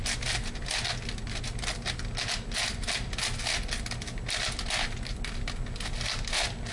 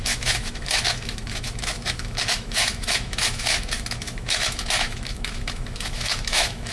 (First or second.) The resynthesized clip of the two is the second